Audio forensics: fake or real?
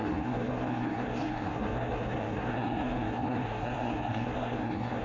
fake